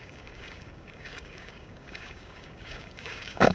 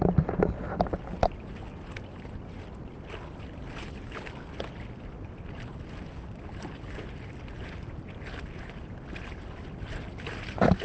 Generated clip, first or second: first